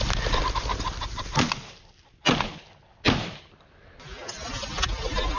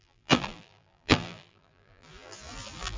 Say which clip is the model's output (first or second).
second